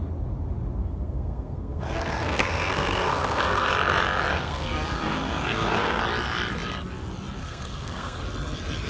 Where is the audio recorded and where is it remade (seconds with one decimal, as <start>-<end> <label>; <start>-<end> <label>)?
0.0-0.8 recorded; 0.8-3.7 remade; 3.7-4.3 recorded; 4.3-6.0 remade; 6.0-7.4 recorded; 7.4-8.2 remade; 8.2-8.9 recorded